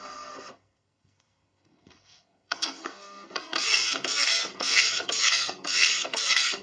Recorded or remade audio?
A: remade